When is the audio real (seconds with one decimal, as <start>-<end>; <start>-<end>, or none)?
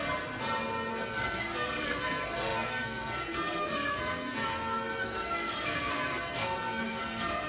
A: 0.0-0.9